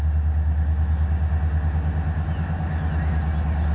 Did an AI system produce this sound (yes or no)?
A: no